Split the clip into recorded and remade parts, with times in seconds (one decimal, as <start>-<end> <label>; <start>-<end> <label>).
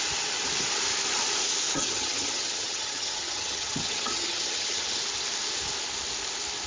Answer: 0.0-1.7 recorded; 1.7-5.0 remade; 5.0-6.7 recorded